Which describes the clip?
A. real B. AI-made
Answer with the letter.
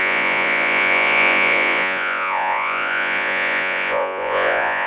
B